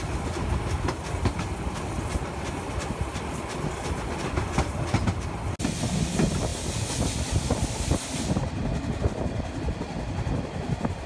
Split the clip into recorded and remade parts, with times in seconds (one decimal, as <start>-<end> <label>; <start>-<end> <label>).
0.0-11.1 recorded